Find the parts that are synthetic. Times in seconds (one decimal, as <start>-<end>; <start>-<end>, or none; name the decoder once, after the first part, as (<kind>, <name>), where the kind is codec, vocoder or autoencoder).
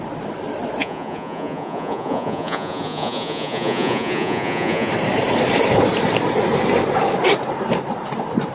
0.8-4.9 (vocoder, Vocos)